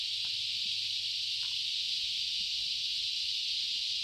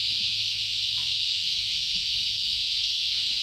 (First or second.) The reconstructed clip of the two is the second